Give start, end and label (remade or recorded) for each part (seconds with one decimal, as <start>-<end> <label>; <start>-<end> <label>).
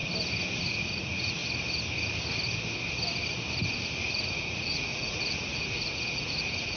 0.0-0.6 recorded; 0.6-1.4 remade; 1.4-4.0 recorded; 4.0-6.8 remade